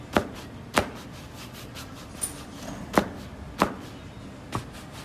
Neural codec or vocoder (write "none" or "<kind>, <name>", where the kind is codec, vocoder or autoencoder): none